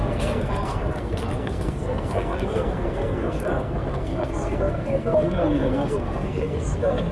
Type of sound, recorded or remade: remade